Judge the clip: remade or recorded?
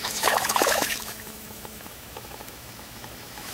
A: remade